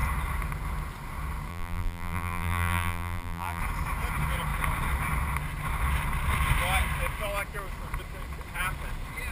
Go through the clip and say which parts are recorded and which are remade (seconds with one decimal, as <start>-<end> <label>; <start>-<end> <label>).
0.0-1.5 recorded; 1.5-3.6 remade; 3.6-9.3 recorded